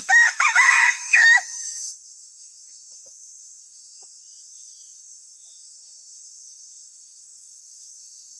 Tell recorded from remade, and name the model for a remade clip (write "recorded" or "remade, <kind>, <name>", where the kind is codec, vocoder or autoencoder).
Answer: remade, autoencoder, DAC-VAE